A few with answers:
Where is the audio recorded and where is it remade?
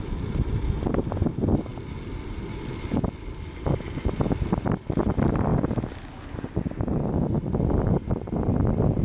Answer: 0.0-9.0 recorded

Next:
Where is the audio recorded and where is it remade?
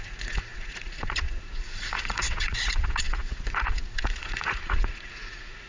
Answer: 0.0-5.7 remade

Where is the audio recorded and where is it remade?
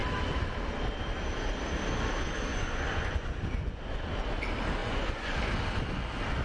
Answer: 0.0-2.5 recorded; 2.5-3.8 remade; 3.8-4.8 recorded; 4.8-5.4 remade; 5.4-6.4 recorded